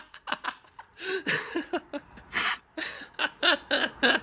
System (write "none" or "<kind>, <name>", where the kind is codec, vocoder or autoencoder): none